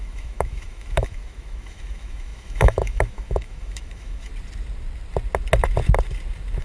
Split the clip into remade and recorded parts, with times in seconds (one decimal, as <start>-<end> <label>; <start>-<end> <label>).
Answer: 0.0-4.3 remade; 4.3-6.6 recorded